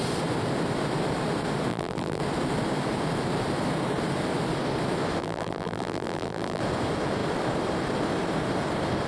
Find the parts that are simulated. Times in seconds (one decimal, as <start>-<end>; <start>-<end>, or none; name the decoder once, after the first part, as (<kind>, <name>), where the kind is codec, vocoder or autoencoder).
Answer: 1.7-2.2 (vocoder, BigVGAN v2); 5.2-6.6